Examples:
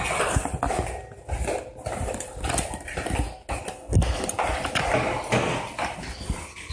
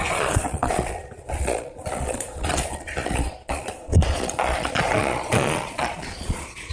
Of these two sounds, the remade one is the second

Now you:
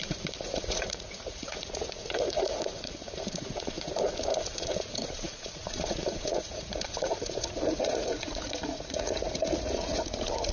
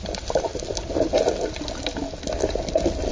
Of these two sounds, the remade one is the first